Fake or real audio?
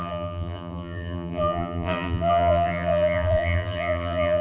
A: fake